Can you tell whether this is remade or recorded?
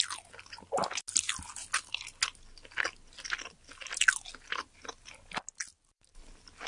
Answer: recorded